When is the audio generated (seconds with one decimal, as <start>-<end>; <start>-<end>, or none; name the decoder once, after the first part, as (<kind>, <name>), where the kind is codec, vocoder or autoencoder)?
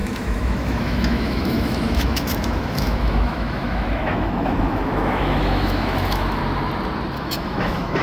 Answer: 0.0-6.4 (autoencoder, DAC-VAE); 7.2-8.0